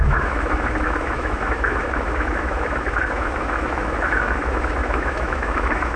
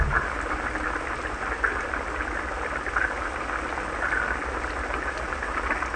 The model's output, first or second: first